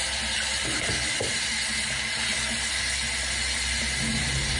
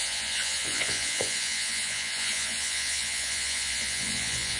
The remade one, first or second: second